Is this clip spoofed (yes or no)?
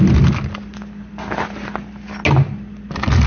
no